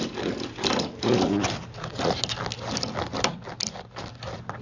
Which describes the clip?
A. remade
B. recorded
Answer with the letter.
B